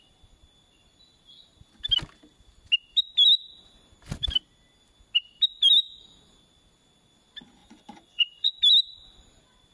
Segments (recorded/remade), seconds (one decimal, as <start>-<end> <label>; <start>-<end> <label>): 0.0-7.6 recorded; 7.6-8.5 remade; 8.5-9.7 recorded